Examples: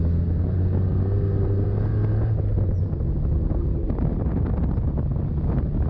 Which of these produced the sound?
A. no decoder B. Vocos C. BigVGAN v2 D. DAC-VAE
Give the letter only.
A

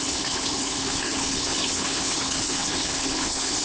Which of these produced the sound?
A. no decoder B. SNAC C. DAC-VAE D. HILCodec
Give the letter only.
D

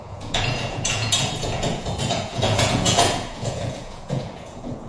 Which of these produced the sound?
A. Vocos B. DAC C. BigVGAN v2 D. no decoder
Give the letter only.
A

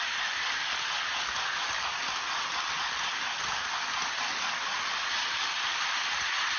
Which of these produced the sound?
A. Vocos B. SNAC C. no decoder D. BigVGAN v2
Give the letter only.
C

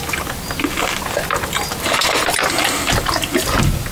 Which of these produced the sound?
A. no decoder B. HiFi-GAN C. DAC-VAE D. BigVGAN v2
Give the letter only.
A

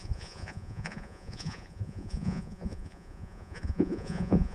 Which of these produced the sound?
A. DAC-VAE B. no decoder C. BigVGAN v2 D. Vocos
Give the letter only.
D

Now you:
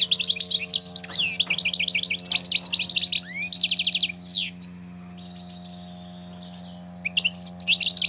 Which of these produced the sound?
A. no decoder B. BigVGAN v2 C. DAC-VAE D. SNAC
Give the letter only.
A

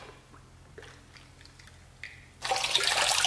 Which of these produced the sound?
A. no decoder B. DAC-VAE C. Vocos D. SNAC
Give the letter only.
A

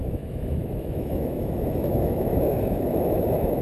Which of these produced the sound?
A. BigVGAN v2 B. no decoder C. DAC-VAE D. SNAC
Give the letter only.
C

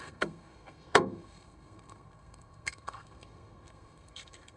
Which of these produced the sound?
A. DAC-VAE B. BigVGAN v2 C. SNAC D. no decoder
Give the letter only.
C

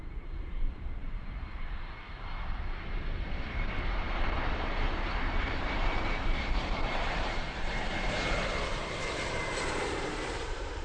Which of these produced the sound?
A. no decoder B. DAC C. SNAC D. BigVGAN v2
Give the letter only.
D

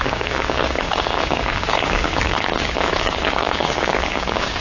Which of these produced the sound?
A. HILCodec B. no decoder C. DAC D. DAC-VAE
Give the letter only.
C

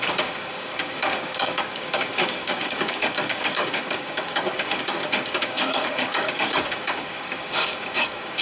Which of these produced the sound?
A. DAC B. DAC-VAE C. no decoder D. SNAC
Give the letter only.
A